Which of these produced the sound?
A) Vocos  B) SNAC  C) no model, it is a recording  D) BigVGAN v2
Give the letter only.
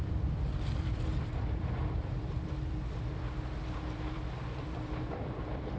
D